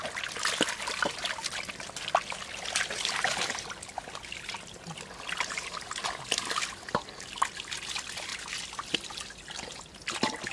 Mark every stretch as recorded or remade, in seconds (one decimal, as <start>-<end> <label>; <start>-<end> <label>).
0.0-10.5 recorded